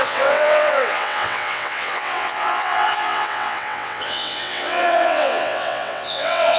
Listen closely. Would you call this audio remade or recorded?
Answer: remade